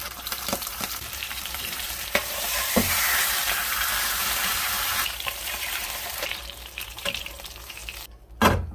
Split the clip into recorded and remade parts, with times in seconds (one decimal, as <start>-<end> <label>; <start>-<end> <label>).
0.0-7.8 remade; 7.8-8.7 recorded